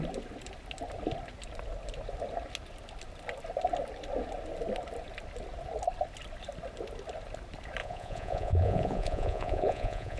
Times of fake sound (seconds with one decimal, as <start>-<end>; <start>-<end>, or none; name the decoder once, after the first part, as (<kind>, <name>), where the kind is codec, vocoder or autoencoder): 7.8-10.2 (vocoder, Vocos)